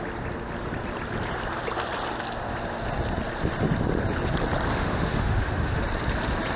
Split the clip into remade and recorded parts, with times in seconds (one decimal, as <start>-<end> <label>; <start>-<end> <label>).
0.0-4.7 recorded; 4.7-5.8 remade; 5.8-6.6 recorded